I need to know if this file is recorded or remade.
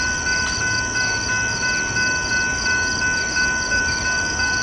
recorded